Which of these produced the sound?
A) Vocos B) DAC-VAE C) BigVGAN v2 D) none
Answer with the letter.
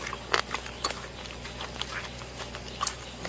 D